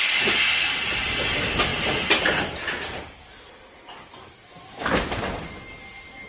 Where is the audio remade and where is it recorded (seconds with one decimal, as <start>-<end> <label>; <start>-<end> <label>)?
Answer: 0.0-6.3 recorded